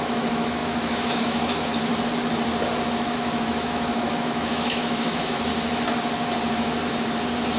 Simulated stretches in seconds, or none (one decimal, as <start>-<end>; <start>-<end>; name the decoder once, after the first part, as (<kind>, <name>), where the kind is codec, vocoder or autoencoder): 0.0-1.9 (autoencoder, DAC-VAE); 2.9-5.5